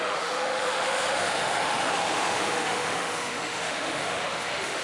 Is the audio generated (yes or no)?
yes